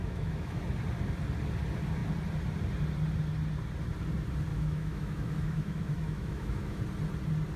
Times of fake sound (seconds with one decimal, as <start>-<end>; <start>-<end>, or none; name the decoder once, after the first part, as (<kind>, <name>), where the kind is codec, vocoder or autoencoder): 0.0-0.6 (autoencoder, DAC-VAE); 4.5-6.8